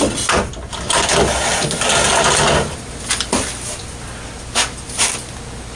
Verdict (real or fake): real